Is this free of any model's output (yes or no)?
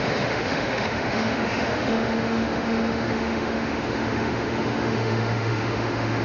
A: no